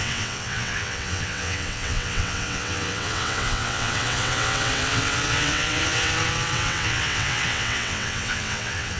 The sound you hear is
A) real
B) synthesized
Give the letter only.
B